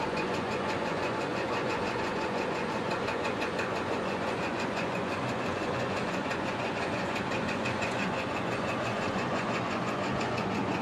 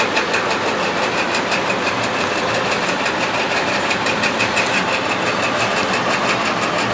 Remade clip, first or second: first